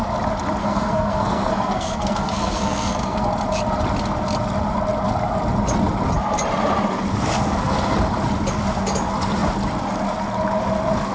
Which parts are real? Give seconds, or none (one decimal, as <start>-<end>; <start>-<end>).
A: 0.0-0.6; 3.3-11.1